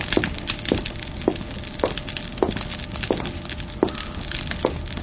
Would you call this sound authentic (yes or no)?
yes